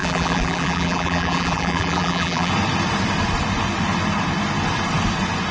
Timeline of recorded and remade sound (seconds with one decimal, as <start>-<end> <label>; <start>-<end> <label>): 0.0-2.5 remade; 2.5-5.5 recorded